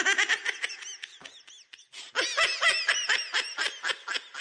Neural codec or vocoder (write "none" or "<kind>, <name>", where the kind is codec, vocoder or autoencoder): none